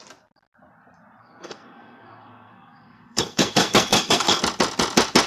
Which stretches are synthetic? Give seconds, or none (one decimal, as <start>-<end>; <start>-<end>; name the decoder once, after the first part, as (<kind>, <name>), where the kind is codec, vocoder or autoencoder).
1.2-4.4 (codec, SNAC)